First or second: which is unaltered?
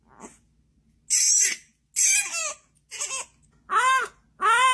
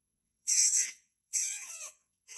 first